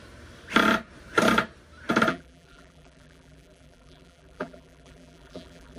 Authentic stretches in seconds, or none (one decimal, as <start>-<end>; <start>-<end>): 0.0-2.1